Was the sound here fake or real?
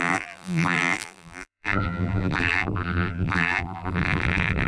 fake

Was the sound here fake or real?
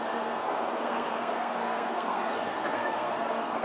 fake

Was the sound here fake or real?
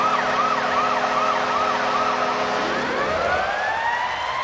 real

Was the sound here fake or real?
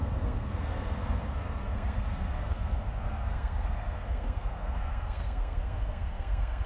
fake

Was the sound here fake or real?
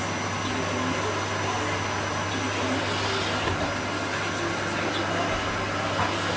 real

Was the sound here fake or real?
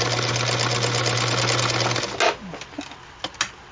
real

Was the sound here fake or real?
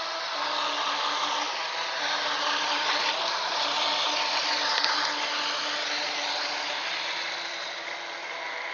real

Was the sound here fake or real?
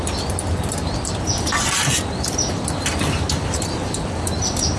real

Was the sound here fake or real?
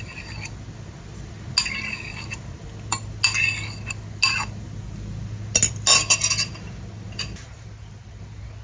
real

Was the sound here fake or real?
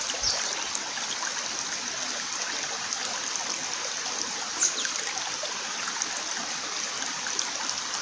real